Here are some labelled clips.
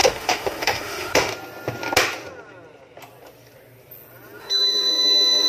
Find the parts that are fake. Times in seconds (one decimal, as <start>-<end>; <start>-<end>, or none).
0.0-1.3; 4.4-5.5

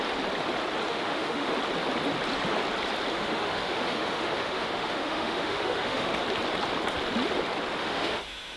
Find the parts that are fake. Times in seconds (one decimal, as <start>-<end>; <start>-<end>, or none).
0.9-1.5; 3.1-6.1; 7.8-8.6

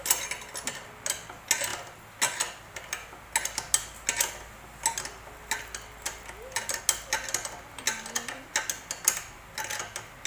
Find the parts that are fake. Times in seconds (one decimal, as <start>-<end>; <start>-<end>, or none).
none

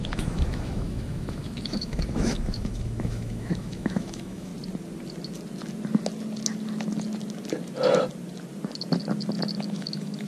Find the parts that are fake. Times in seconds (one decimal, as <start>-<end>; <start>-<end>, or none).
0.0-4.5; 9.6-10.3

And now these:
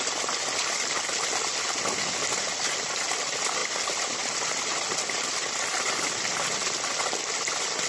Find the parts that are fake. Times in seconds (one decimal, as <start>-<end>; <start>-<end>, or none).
none

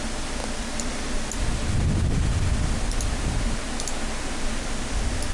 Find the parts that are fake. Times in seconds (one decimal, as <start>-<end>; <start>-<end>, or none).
none

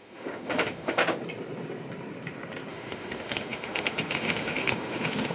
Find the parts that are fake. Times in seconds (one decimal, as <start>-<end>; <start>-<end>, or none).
0.0-1.0; 2.7-5.3